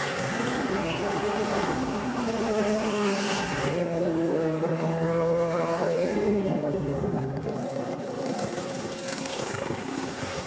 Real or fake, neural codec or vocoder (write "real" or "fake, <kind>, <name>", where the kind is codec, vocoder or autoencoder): fake, codec, SNAC